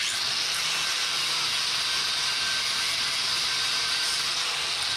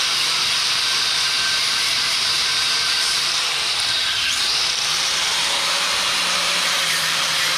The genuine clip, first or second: first